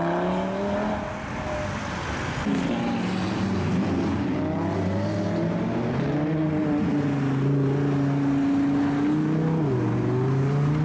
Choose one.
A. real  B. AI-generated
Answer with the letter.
A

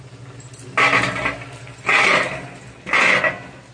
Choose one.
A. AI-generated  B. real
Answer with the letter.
B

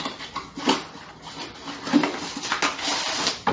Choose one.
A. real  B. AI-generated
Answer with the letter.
A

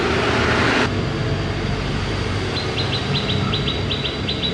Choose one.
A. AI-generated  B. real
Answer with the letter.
B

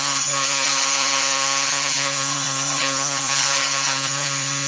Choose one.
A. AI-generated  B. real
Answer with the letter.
A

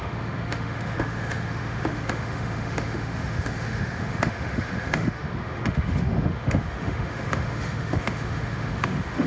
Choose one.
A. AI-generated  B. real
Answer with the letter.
A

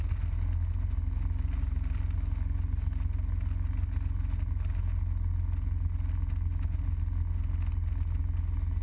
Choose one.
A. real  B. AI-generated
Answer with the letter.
A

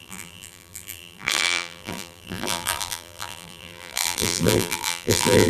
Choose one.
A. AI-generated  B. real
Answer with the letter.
A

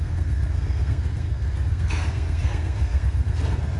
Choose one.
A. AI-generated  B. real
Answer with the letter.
A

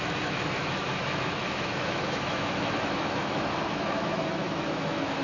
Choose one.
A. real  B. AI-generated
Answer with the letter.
B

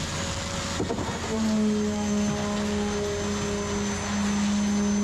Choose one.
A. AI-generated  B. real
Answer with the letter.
B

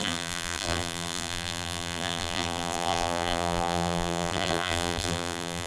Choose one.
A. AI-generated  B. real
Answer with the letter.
A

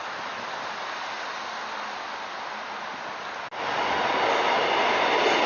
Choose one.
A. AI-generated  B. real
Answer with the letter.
B